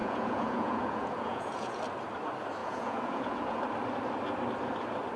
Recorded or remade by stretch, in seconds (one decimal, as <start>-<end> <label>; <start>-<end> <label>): 0.0-1.8 remade; 1.8-2.6 recorded; 2.6-3.6 remade; 3.6-5.2 recorded